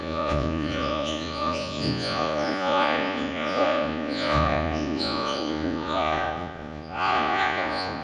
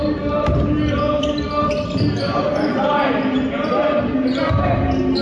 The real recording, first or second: second